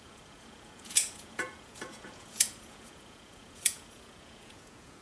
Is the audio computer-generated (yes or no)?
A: yes